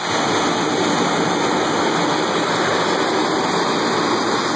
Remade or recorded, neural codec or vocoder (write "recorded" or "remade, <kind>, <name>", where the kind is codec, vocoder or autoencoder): recorded